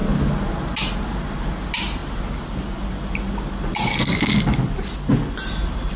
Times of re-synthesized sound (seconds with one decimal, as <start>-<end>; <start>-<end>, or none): none